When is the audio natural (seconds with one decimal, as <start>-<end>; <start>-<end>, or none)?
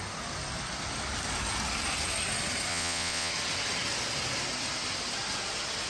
0.0-2.7; 3.3-5.9